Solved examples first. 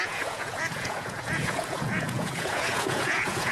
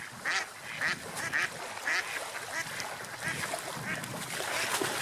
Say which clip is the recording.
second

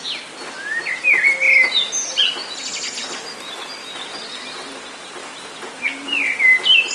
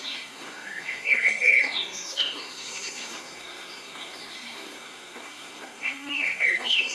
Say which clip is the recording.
first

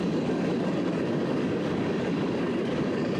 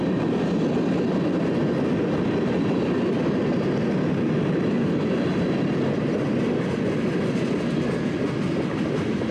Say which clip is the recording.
second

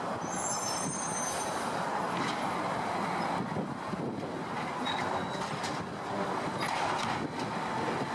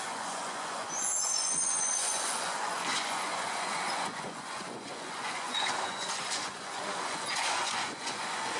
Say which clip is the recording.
first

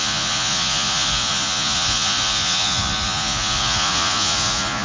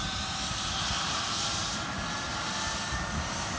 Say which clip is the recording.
second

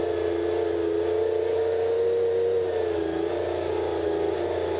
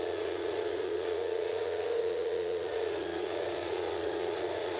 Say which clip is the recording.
first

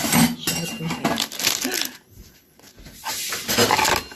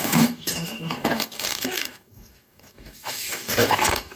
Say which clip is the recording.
first